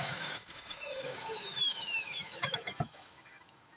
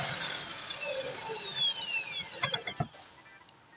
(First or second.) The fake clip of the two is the first